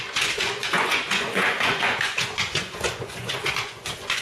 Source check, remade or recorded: remade